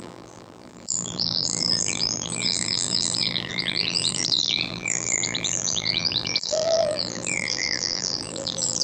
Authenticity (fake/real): fake